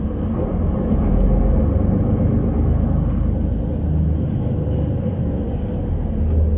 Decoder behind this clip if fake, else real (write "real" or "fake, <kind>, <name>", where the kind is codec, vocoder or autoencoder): real